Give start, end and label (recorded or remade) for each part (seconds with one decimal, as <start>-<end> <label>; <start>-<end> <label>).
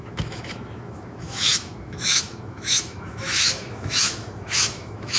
0.0-5.2 remade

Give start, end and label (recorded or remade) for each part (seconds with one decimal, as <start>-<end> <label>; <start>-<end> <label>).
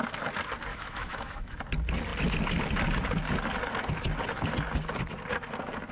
0.0-0.7 recorded; 0.7-1.6 remade; 1.6-5.9 recorded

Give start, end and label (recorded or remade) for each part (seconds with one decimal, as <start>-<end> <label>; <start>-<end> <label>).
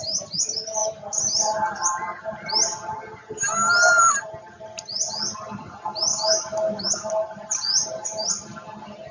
0.0-6.1 recorded; 6.1-7.1 remade; 7.1-9.1 recorded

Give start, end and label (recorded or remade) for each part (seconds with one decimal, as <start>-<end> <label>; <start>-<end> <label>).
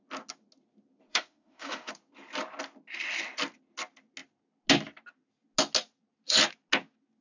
0.0-1.1 recorded; 1.1-1.9 remade; 1.9-7.2 recorded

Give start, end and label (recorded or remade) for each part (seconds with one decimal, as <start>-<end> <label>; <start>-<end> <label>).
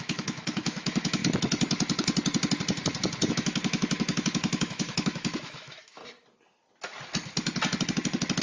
0.0-1.2 remade; 1.2-3.3 recorded; 3.3-6.0 remade; 6.0-8.4 recorded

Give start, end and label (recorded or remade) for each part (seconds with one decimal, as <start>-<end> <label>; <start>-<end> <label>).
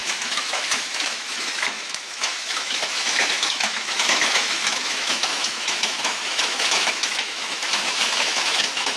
0.0-9.0 remade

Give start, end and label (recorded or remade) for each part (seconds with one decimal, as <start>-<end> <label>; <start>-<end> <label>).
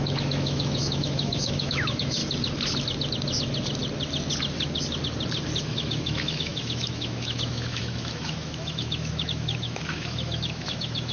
0.0-2.2 remade; 2.2-5.6 recorded; 5.6-11.1 remade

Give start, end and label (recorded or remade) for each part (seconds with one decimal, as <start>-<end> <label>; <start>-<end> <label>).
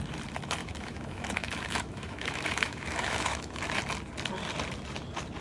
0.0-0.6 recorded; 0.6-3.6 remade; 3.6-5.4 recorded